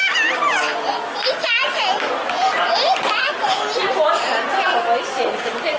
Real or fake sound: real